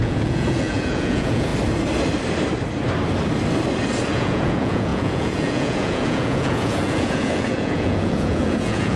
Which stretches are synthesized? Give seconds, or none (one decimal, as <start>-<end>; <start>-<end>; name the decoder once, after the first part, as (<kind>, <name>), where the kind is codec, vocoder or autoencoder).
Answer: 0.0-1.5 (vocoder, Vocos); 4.1-9.0